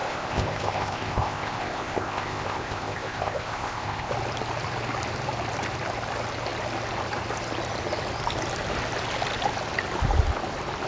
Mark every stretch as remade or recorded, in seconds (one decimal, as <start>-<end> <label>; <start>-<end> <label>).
0.0-4.1 remade; 4.1-10.9 recorded